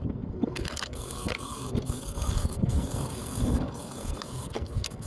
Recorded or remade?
remade